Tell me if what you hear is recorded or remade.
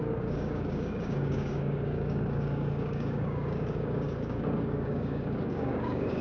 remade